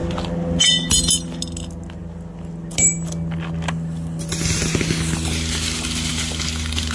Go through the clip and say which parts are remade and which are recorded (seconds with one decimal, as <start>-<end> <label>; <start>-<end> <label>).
0.0-6.9 recorded